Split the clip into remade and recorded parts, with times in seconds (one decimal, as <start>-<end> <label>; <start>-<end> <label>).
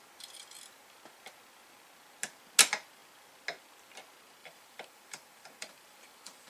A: 0.0-4.4 recorded; 4.4-6.5 remade